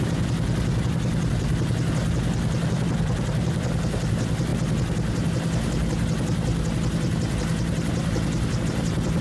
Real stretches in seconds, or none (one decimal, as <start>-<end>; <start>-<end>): 0.0-9.2